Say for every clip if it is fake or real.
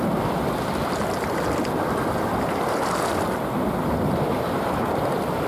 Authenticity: real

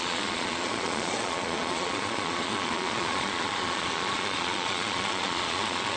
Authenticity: fake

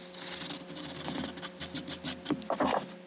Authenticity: real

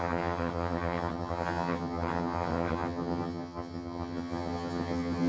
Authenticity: fake